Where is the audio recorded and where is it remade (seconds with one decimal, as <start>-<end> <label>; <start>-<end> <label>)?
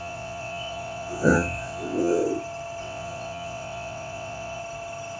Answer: 0.0-2.2 remade; 2.2-2.8 recorded; 2.8-4.6 remade; 4.6-5.2 recorded